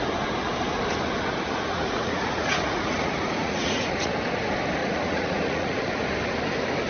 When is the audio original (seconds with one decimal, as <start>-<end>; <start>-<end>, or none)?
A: 0.0-1.7; 4.1-4.8; 5.9-6.9